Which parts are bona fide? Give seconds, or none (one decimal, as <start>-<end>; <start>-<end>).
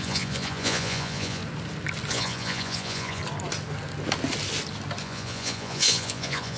1.4-2.1; 3.2-5.0